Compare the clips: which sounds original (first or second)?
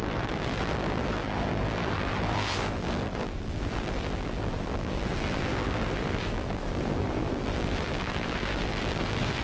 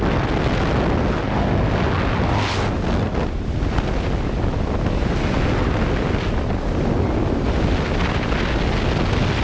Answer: second